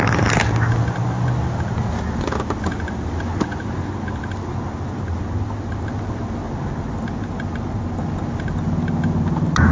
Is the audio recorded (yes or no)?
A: yes